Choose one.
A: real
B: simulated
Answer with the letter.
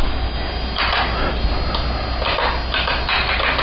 A